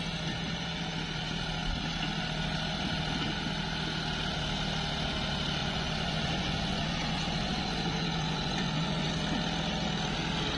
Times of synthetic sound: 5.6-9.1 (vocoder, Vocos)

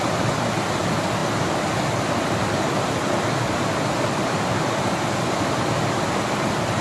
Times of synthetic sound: none